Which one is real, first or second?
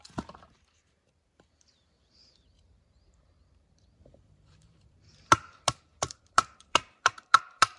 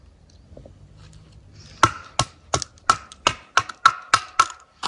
second